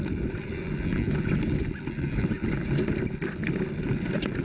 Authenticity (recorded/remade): recorded